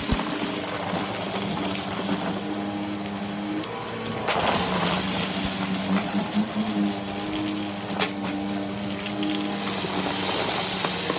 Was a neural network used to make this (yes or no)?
no